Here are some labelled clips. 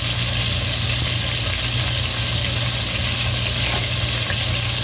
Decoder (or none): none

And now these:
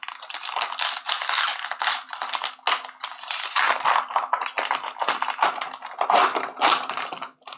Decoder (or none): none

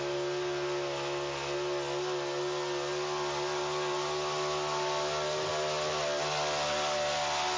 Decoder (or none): none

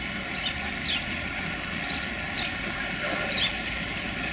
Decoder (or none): none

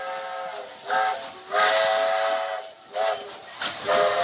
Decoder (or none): none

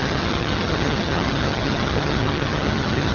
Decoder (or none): vocoder, HiFi-GAN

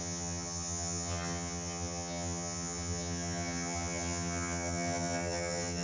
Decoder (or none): vocoder, HiFi-GAN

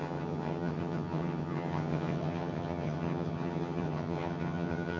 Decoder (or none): vocoder, HiFi-GAN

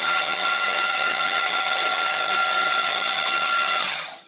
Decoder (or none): vocoder, HiFi-GAN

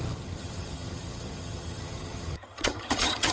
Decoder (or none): vocoder, HiFi-GAN